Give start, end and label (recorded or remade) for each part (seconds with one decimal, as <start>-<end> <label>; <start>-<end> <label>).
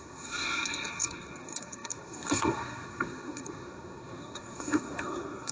0.0-5.5 remade